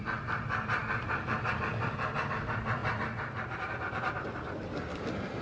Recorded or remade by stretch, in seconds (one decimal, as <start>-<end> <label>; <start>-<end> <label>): 0.0-5.4 recorded